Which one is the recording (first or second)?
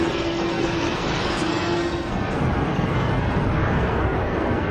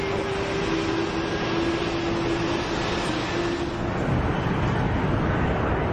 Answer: second